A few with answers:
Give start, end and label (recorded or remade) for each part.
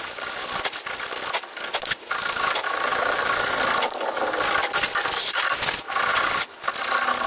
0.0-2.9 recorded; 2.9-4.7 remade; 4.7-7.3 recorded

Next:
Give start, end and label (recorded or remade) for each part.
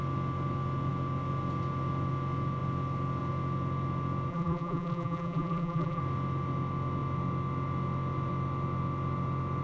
0.0-4.3 recorded; 4.3-6.0 remade; 6.0-9.6 recorded